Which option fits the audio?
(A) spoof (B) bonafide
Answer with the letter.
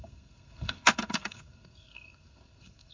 A